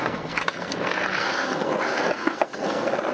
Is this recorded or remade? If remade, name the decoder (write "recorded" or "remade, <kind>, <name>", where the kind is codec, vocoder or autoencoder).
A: remade, codec, SNAC